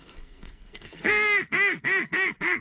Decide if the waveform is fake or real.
fake